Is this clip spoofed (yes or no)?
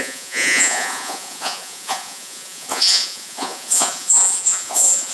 yes